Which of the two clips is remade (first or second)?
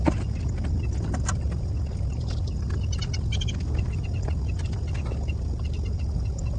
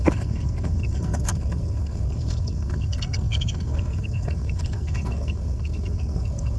second